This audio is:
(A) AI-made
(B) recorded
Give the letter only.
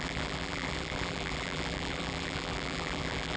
A